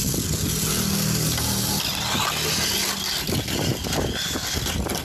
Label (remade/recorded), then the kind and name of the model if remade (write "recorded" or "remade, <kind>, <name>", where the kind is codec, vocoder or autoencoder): recorded